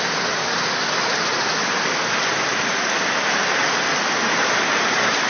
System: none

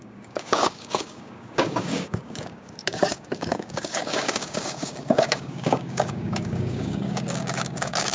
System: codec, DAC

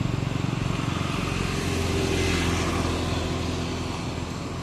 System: none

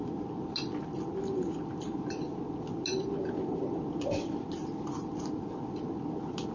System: none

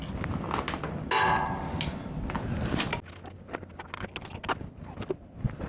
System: none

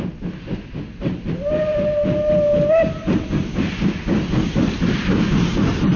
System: none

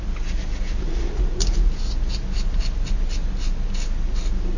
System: none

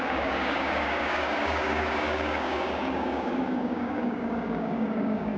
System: codec, DAC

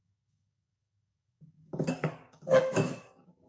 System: codec, DAC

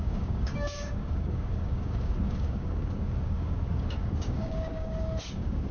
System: codec, DAC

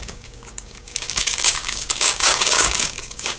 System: codec, DAC